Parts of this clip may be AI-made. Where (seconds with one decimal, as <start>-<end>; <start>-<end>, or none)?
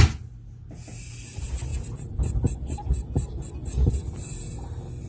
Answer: none